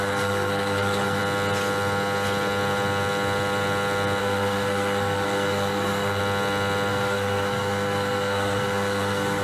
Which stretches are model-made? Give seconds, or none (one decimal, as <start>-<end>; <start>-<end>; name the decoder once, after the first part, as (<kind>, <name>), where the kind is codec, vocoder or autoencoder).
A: 0.0-1.2 (codec, SNAC); 4.2-6.2; 6.9-9.4

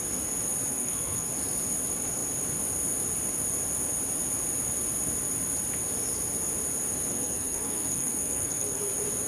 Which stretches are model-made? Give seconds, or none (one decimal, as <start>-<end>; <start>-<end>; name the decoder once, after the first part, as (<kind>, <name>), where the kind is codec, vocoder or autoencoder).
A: 0.7-1.3 (codec, SNAC); 7.1-8.9

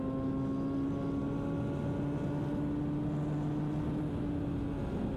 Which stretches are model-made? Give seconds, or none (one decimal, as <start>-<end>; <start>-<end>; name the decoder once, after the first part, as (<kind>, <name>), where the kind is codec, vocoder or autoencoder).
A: none

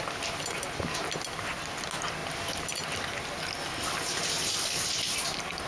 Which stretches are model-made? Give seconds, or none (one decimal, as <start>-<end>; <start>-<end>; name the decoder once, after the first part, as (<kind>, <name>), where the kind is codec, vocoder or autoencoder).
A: none

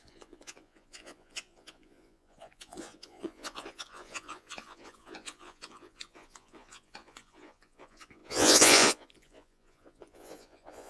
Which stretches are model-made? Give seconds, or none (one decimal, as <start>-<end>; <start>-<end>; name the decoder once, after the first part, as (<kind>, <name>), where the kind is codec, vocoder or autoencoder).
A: 0.0-10.9 (vocoder, Vocos)

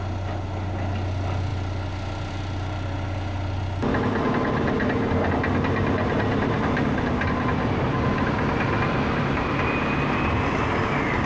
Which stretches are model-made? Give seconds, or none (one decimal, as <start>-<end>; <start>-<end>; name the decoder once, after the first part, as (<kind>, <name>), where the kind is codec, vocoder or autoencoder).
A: none